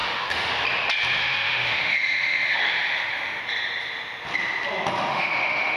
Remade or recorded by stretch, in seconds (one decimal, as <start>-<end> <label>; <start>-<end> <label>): 0.0-0.5 remade; 0.5-1.2 recorded; 1.2-3.4 remade; 3.4-5.1 recorded; 5.1-5.8 remade